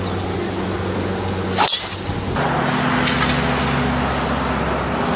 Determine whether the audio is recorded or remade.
recorded